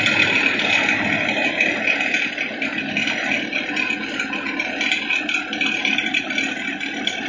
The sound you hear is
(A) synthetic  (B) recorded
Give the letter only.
B